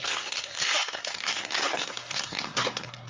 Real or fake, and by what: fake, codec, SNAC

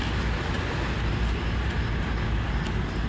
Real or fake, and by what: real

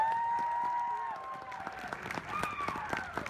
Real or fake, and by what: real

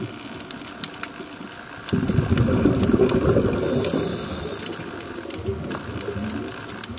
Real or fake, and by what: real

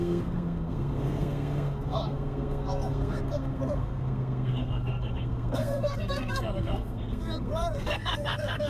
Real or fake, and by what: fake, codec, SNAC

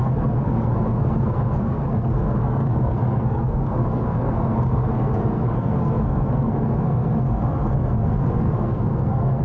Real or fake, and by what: fake, codec, SNAC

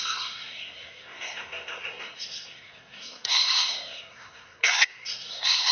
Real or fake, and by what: fake, codec, SNAC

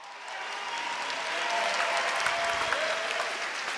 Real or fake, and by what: real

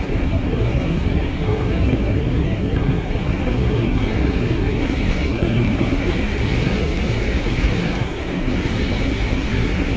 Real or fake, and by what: fake, codec, SNAC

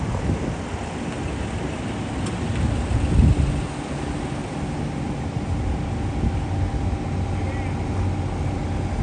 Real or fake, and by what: real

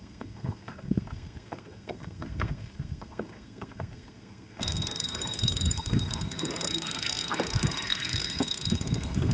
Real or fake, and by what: fake, codec, SNAC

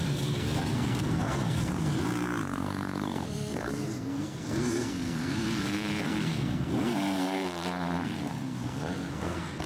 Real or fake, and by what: fake, codec, SNAC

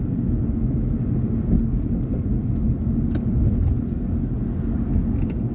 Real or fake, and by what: real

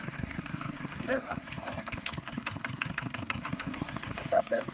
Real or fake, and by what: fake, codec, SNAC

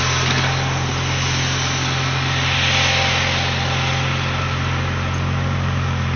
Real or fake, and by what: real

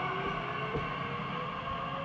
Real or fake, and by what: real